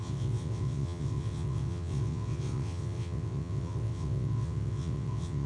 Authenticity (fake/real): fake